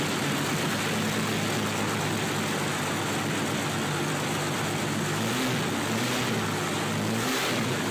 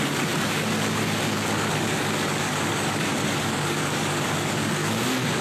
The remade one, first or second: second